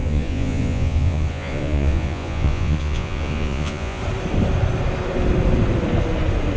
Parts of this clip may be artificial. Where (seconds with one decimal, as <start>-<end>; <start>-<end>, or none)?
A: 0.0-4.0